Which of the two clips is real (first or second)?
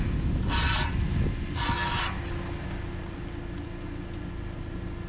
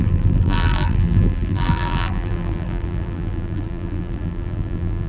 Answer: first